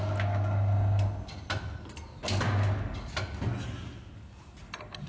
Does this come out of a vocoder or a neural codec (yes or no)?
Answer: no